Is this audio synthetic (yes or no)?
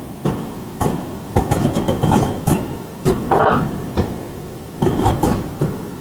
yes